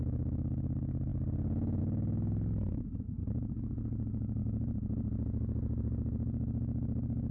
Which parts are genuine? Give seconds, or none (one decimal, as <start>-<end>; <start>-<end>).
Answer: 1.1-1.8; 4.4-7.3